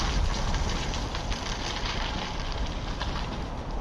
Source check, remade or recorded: recorded